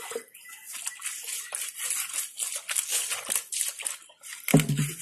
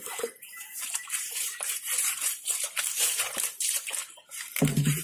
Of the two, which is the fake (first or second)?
second